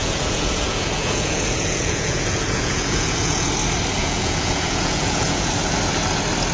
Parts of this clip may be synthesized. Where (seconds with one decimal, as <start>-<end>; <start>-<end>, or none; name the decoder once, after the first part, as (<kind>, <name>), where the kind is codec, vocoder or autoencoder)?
0.0-3.5 (vocoder, Vocos); 4.0-5.5